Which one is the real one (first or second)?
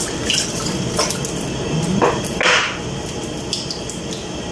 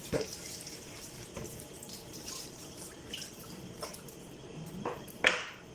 first